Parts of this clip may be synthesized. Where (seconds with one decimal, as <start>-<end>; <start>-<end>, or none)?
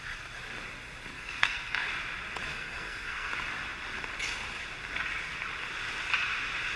1.1-1.9; 2.5-3.3